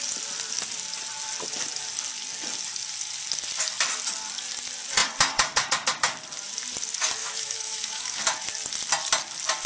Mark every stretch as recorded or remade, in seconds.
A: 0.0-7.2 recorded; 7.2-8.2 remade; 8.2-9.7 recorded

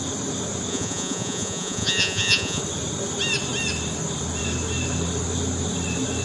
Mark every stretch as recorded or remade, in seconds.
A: 0.0-0.7 recorded; 0.7-2.6 remade; 2.6-6.2 recorded

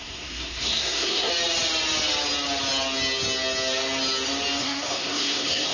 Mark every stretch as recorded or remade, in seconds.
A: 0.0-1.3 remade; 1.3-4.6 recorded; 4.6-5.7 remade

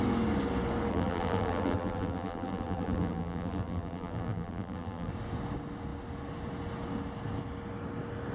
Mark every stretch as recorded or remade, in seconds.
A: 0.0-0.9 recorded; 0.9-5.1 remade; 5.1-8.3 recorded

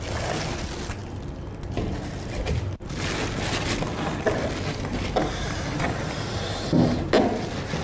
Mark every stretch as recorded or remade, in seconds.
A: 0.0-7.8 recorded